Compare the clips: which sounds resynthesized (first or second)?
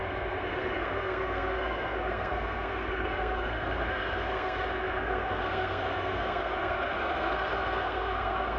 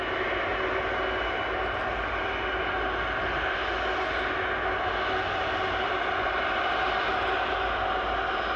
first